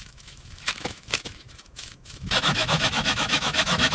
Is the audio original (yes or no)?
no